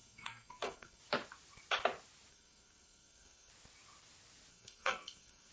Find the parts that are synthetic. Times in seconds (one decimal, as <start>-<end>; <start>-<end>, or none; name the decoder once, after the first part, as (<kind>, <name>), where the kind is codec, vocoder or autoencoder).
0.0-1.0 (codec, SNAC); 2.3-3.5; 4.5-5.5